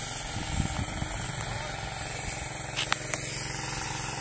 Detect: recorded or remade recorded